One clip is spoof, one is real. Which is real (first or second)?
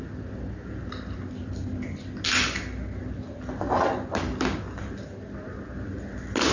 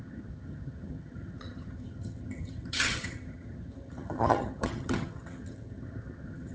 first